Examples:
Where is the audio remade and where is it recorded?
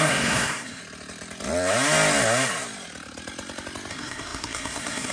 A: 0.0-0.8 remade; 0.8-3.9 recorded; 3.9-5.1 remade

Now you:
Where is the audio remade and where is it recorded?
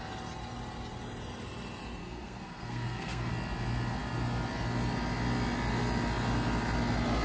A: 0.0-2.0 recorded; 2.0-3.3 remade; 3.3-7.2 recorded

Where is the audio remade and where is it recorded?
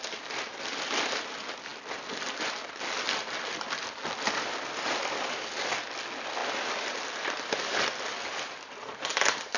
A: 0.0-9.6 recorded